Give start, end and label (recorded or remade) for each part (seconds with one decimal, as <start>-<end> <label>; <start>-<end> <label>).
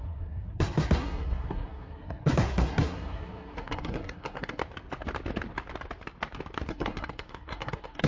0.0-4.6 remade; 4.6-6.7 recorded; 6.7-8.1 remade